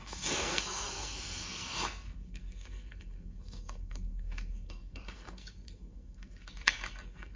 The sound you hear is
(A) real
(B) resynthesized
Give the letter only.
B